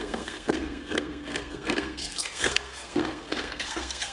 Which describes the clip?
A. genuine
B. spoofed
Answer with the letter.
B